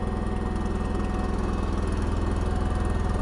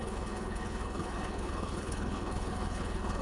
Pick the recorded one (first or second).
first